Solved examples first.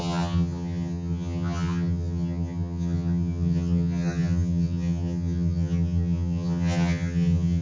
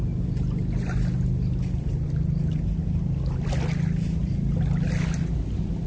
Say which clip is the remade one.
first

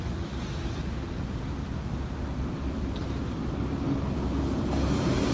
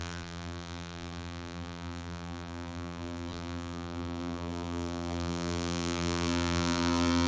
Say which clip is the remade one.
second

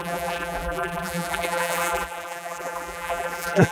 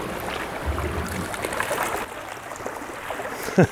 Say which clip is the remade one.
first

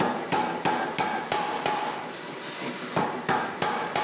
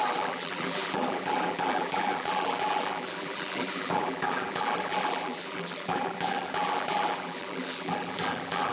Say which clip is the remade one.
second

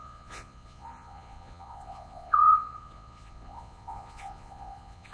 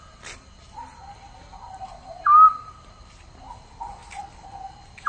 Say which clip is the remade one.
first